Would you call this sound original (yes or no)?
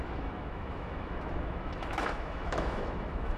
no